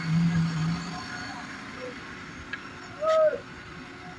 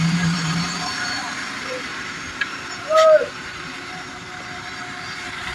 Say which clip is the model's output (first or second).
second